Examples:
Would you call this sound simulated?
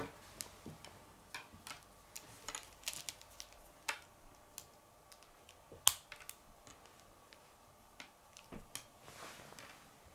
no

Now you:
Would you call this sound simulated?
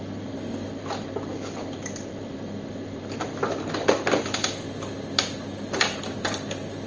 yes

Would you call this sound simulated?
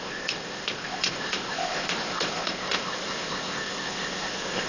yes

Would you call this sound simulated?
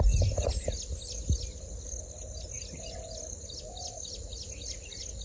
no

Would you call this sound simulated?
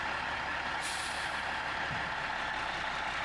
no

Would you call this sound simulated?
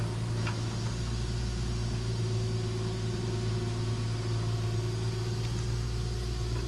no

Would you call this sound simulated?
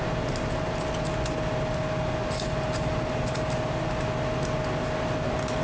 no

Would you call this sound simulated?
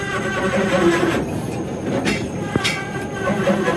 no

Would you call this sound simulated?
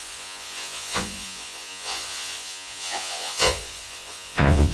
yes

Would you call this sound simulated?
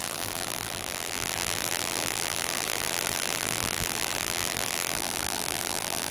yes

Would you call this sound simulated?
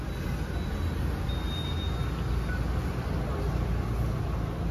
no